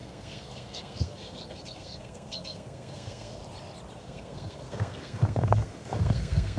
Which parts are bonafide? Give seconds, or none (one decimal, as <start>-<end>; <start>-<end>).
3.4-4.0